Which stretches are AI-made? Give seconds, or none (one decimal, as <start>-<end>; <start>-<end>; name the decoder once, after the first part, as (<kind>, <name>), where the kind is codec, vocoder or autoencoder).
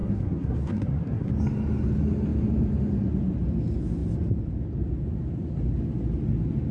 0.0-1.3 (codec, SNAC)